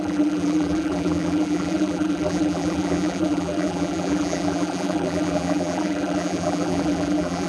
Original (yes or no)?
no